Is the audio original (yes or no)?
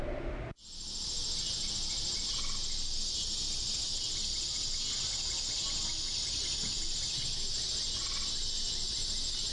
yes